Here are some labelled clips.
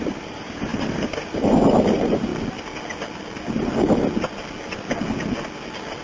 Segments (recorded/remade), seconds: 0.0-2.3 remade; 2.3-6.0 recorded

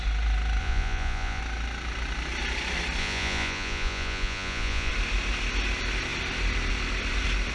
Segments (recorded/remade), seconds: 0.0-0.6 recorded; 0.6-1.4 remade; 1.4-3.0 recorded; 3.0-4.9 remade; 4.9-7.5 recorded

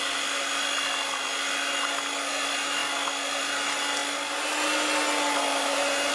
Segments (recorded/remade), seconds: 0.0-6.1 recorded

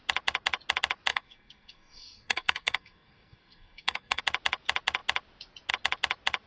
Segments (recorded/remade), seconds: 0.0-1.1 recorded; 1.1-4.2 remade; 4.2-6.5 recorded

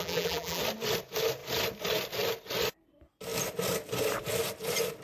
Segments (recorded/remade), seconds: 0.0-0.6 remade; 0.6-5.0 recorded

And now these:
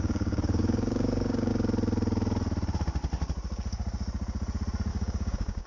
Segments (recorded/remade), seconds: 0.0-1.5 remade; 1.5-4.9 recorded; 4.9-5.7 remade

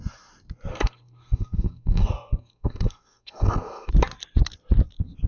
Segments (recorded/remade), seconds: 0.0-0.7 recorded; 0.7-3.9 remade; 3.9-5.3 recorded

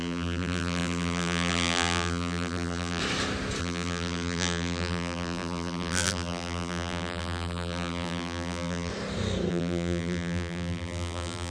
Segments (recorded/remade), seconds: 0.0-3.0 remade; 3.0-3.6 recorded; 3.6-8.9 remade; 8.9-9.5 recorded; 9.5-11.5 remade